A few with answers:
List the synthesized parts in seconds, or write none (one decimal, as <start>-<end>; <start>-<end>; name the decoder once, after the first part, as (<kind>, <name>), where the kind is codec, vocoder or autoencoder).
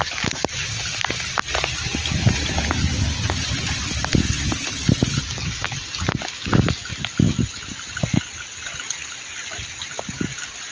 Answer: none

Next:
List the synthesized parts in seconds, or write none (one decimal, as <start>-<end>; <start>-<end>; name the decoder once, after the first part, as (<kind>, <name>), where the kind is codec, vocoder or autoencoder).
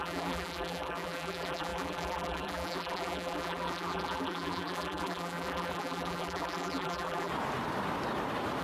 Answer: 0.0-7.3 (vocoder, BigVGAN v2)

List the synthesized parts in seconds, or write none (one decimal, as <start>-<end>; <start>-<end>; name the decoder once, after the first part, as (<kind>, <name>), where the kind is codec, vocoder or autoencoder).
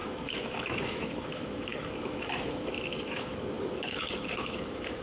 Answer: 0.0-5.0 (autoencoder, DAC-VAE)